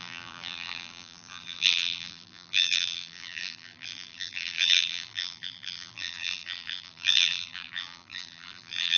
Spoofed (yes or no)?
yes